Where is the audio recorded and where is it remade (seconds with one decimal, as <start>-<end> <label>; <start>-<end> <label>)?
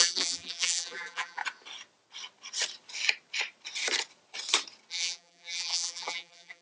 0.0-1.4 remade; 1.4-4.9 recorded; 4.9-6.6 remade